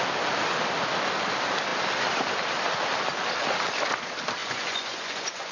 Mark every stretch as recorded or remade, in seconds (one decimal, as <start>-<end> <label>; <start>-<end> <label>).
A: 0.0-4.4 recorded; 4.4-5.5 remade